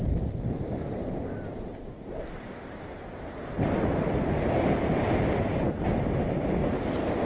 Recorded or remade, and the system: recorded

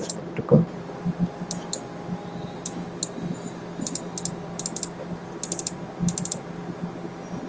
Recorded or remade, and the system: recorded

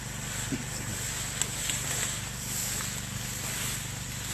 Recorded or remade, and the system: recorded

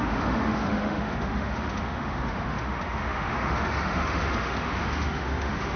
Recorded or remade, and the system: remade, autoencoder, DAC-VAE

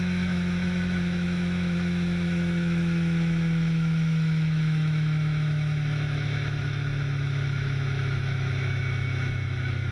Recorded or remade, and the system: remade, autoencoder, DAC-VAE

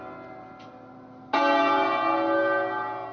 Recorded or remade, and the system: recorded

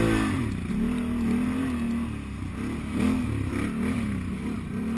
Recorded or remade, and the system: recorded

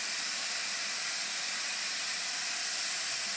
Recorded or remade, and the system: recorded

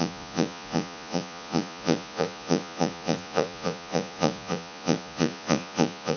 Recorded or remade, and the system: remade, vocoder, Vocos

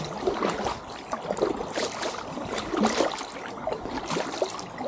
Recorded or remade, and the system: recorded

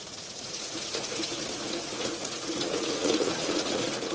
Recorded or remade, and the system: remade, vocoder, Vocos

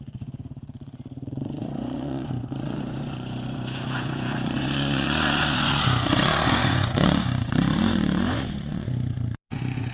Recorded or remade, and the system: remade, vocoder, Vocos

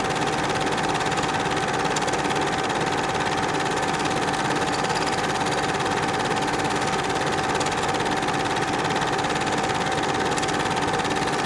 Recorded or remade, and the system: recorded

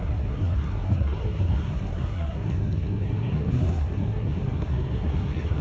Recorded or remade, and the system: remade, codec, SNAC